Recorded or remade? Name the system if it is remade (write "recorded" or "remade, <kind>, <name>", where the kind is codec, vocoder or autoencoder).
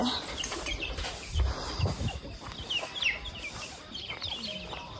remade, vocoder, BigVGAN v2